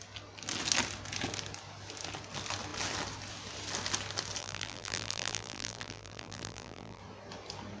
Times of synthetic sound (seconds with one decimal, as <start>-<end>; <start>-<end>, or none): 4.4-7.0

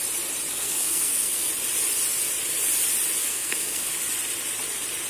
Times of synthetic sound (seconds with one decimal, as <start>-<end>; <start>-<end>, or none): 0.5-1.5; 3.2-3.9

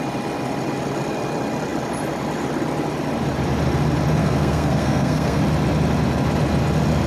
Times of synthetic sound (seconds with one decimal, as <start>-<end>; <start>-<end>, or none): 4.2-5.4

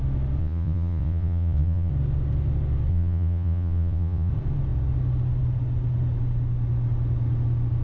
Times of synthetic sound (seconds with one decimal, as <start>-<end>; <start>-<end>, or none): 0.4-1.9; 2.9-4.3

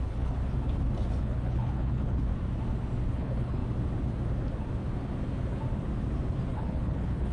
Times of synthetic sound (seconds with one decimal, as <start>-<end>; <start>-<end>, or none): 0.0-0.4; 1.1-2.3; 3.1-3.6; 6.5-7.3

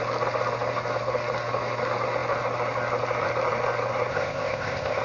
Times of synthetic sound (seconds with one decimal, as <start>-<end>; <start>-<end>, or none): 4.1-5.0

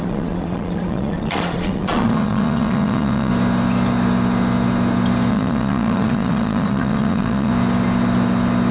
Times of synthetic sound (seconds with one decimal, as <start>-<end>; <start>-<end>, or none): 0.0-3.3; 5.3-7.5

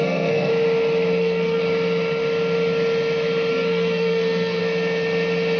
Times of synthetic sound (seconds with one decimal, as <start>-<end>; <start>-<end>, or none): 0.0-0.5; 1.2-1.6; 3.5-4.6